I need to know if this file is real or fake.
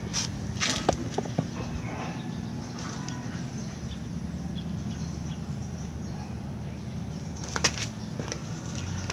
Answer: real